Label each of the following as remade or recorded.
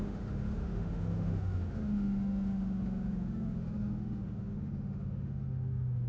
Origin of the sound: remade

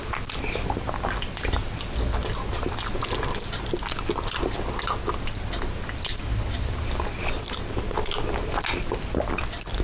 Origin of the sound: recorded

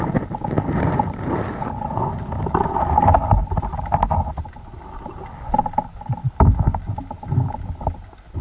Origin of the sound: recorded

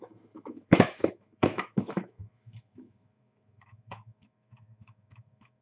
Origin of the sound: remade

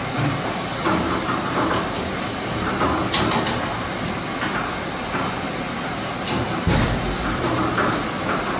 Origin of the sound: recorded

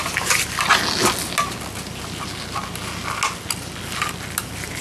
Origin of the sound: recorded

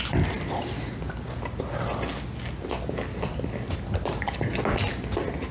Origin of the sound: recorded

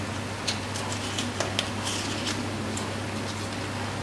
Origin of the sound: recorded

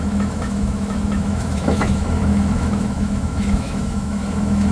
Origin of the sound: remade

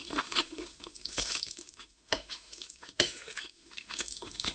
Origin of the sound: remade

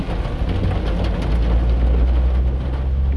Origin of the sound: recorded